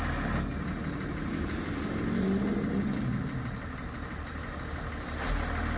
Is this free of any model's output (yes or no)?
yes